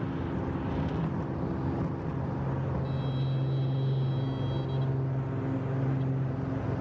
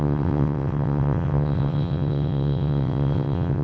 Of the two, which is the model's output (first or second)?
second